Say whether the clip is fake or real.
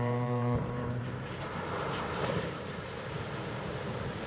fake